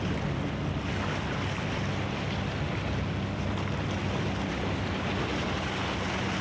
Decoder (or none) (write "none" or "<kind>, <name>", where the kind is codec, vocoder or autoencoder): none